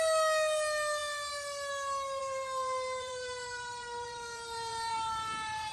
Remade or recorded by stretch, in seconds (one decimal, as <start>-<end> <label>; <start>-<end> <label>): 0.0-2.2 recorded; 2.2-5.7 remade

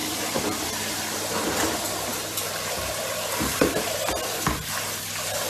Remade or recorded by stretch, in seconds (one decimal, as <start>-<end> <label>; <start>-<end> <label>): 0.0-1.3 remade; 1.3-2.1 recorded; 2.1-3.6 remade; 3.6-5.5 recorded

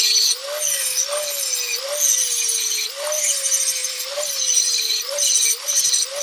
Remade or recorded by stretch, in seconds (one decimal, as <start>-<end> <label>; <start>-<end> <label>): 0.0-0.4 remade; 0.4-2.9 recorded; 2.9-6.2 remade

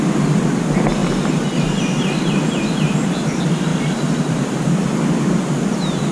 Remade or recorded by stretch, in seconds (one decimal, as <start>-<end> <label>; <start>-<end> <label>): 0.0-3.7 recorded; 3.7-4.4 remade; 4.4-6.1 recorded

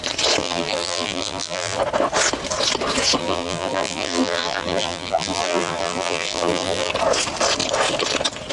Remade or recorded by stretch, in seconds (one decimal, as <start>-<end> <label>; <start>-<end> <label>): 0.0-0.4 recorded; 0.4-1.8 remade; 1.8-3.2 recorded; 3.2-6.9 remade; 6.9-8.5 recorded

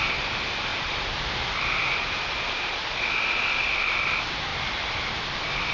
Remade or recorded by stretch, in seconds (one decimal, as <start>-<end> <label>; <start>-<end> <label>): 0.0-0.7 recorded; 0.7-1.2 remade; 1.2-5.7 recorded